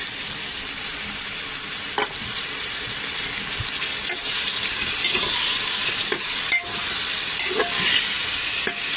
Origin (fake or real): real